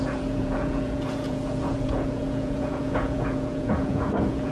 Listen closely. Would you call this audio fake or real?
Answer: fake